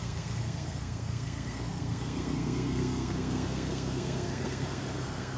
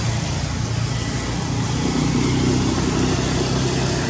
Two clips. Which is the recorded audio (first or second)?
second